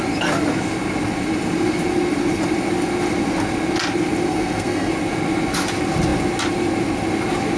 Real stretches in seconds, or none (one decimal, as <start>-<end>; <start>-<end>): 0.0-4.3; 4.9-7.6